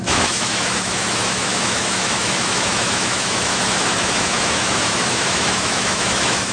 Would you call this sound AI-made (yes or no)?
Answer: yes